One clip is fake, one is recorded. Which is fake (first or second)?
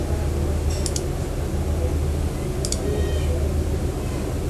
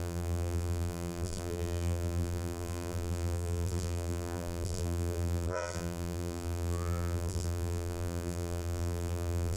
second